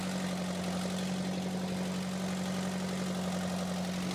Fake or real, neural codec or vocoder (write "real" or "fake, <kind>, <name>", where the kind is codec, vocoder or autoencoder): real